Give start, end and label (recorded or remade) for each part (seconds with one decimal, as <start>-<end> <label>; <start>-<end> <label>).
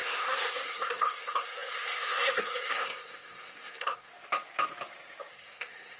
0.0-4.1 remade; 4.1-5.3 recorded; 5.3-6.0 remade